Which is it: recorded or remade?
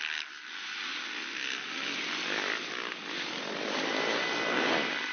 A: recorded